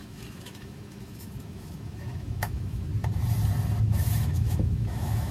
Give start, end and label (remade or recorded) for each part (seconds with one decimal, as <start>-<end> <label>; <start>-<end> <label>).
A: 0.0-2.9 remade; 2.9-3.8 recorded; 3.8-5.3 remade